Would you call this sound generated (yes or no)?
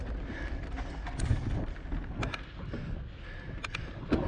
no